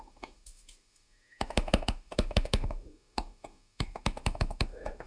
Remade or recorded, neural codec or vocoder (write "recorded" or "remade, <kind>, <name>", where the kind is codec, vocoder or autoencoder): remade, autoencoder, DAC-VAE